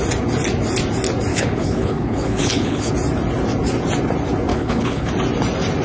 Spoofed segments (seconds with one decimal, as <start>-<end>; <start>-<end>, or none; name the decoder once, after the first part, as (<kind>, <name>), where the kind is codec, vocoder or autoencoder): 1.3-2.9 (codec, HILCodec); 4.5-5.1